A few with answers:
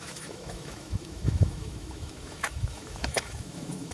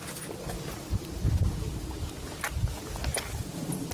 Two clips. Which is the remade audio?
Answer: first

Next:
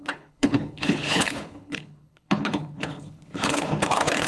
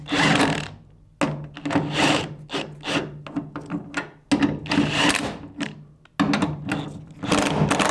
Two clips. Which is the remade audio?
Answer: first